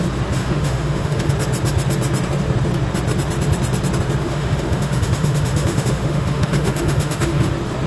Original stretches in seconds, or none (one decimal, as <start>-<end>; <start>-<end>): 0.0-0.4; 1.3-4.2; 7.5-7.9